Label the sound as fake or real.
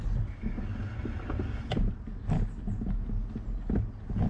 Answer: real